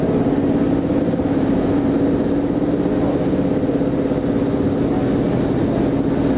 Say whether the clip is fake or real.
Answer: real